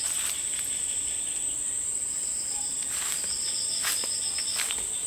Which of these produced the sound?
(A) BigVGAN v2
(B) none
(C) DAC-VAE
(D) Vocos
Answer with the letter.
A